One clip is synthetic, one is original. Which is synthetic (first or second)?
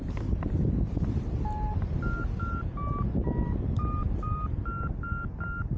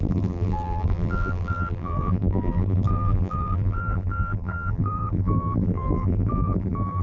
second